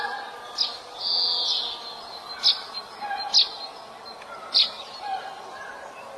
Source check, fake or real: real